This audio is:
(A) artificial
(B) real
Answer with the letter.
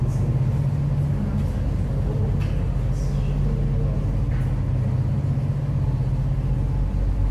B